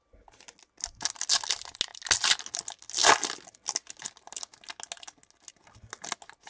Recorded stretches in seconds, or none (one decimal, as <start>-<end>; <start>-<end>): 0.0-6.5